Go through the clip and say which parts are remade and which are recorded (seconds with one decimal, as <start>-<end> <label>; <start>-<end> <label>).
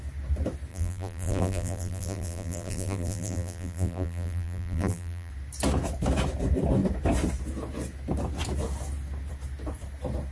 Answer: 0.0-0.7 recorded; 0.7-5.3 remade; 5.3-10.3 recorded